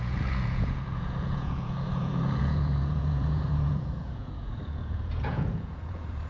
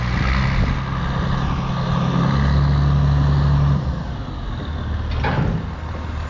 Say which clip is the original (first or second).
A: second